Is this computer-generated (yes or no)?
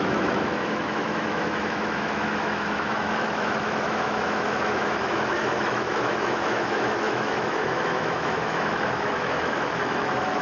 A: yes